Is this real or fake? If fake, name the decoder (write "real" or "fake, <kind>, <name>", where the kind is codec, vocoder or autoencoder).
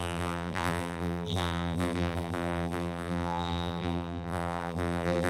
fake, vocoder, BigVGAN v2